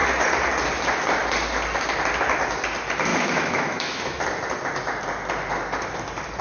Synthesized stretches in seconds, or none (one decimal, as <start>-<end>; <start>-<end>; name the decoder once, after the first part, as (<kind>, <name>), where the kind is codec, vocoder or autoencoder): 3.1-4.2 (autoencoder, DAC-VAE)